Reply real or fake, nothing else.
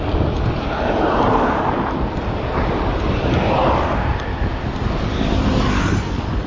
real